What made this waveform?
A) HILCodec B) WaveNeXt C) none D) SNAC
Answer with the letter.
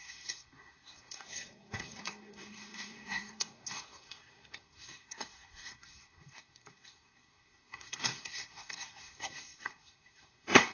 D